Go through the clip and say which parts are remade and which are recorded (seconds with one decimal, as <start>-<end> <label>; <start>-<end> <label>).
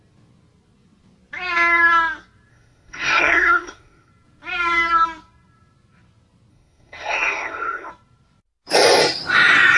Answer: 0.0-2.5 recorded; 2.5-4.1 remade; 4.1-6.5 recorded; 6.5-7.9 remade; 7.9-9.8 recorded